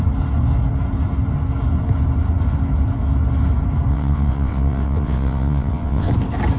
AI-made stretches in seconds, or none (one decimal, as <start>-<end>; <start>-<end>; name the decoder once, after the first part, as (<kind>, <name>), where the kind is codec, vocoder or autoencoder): 3.9-6.1 (vocoder, WaveNeXt)